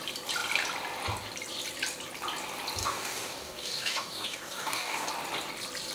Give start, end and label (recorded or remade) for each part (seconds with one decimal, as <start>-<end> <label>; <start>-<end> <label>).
0.0-2.8 recorded; 2.8-5.1 remade; 5.1-5.9 recorded